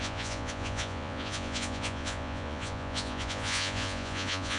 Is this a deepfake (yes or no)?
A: yes